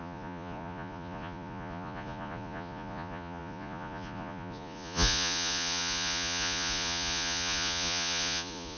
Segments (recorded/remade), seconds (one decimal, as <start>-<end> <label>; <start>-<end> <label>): 0.0-8.8 remade